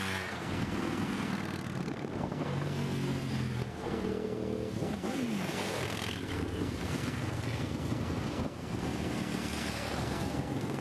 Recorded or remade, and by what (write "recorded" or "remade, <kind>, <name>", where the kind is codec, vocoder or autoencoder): remade, codec, SNAC